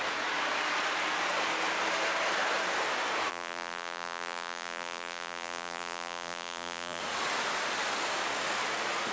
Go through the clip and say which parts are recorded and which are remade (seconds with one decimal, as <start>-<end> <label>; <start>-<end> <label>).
0.0-3.3 recorded; 3.3-7.0 remade; 7.0-9.1 recorded